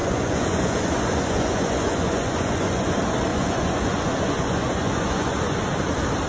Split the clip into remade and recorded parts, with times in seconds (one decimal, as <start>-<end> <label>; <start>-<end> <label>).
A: 0.0-2.9 remade; 2.9-3.3 recorded; 3.3-5.6 remade; 5.6-6.3 recorded